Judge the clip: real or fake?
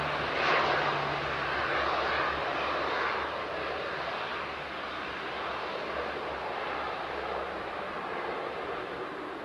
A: real